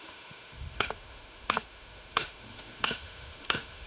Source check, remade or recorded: remade